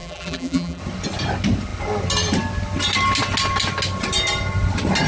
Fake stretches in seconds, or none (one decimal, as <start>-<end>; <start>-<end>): 0.0-0.8